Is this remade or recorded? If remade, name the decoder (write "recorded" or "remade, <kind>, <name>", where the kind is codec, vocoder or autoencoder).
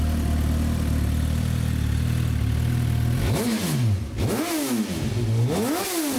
recorded